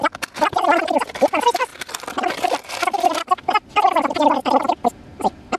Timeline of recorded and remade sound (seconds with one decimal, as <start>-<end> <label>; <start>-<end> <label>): 0.0-5.6 recorded